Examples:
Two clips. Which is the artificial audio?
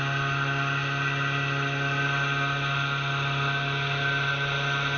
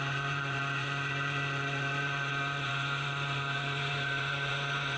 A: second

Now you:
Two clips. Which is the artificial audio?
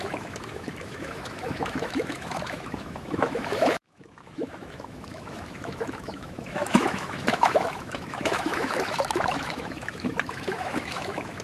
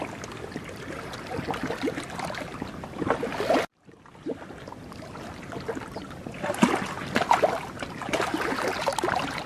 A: first